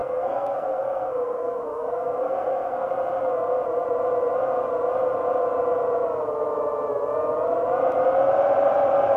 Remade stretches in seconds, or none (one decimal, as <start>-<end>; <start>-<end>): 0.0-2.9